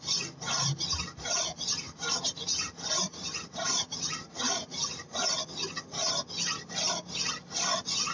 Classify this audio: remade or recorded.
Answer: recorded